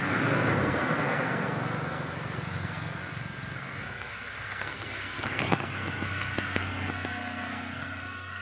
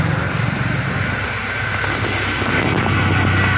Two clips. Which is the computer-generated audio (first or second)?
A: first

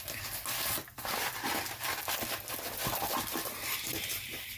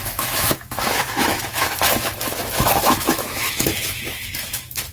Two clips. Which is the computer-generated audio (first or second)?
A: second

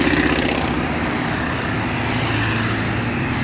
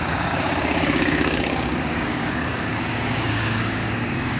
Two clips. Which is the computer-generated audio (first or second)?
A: second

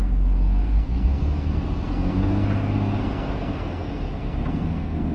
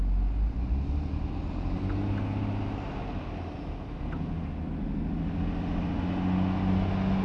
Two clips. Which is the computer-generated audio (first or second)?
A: first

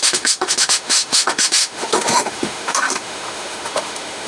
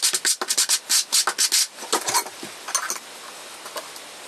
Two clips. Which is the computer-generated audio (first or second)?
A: first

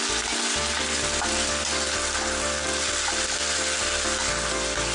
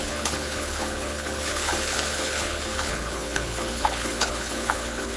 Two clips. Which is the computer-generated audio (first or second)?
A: second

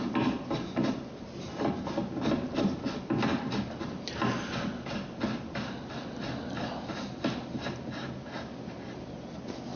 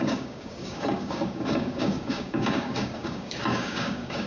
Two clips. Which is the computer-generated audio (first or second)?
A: second